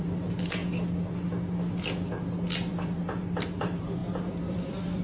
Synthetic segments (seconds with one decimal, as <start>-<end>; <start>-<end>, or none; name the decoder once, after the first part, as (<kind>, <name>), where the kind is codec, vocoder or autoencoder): 0.0-0.6 (vocoder, BigVGAN v2); 2.7-5.0